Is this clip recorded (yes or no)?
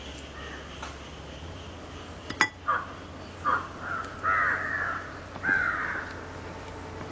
yes